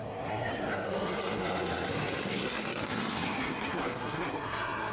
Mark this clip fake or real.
fake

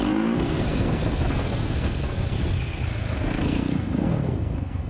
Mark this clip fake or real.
fake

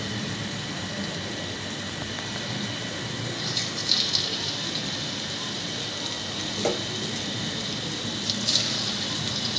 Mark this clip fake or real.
real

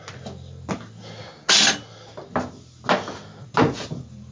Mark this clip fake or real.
real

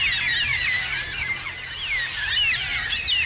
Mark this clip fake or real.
real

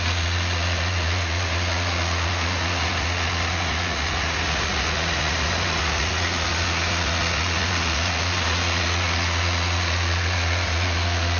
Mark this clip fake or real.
fake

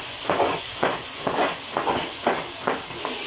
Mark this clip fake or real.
fake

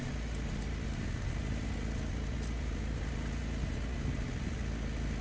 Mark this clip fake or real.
real